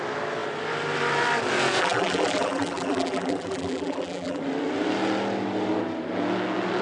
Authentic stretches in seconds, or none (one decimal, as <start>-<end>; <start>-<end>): 0.0-1.8; 4.4-6.8